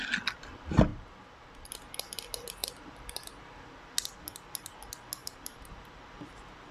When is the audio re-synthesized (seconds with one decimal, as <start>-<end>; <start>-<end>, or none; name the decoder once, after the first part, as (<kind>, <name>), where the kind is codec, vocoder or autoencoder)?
0.9-1.7 (vocoder, BigVGAN v2); 2.6-3.8; 5.2-6.0